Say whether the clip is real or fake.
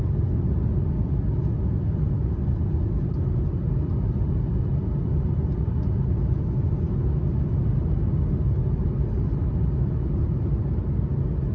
real